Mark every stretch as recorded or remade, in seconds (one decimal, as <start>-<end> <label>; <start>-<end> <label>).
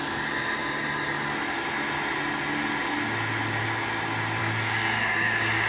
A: 0.0-4.4 recorded; 4.4-5.7 remade